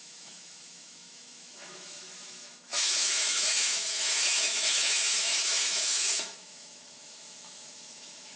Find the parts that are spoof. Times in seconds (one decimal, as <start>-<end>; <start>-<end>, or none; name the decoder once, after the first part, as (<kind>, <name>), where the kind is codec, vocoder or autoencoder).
0.0-8.4 (autoencoder, DAC-VAE)